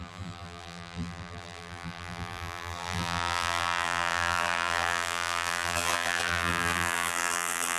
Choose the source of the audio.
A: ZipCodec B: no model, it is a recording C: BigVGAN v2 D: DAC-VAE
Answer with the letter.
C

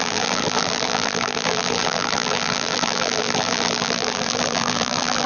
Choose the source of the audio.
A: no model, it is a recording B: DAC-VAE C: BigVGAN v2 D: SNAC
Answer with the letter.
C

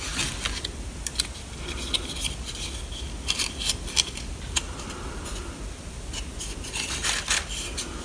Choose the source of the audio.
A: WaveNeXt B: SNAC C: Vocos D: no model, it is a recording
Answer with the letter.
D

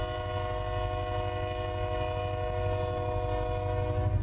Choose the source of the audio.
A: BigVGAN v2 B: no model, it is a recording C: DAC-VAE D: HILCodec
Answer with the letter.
B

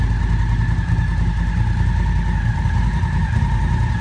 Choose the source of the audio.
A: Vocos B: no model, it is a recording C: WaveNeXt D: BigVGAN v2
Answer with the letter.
B